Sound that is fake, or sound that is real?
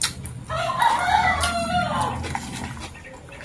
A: real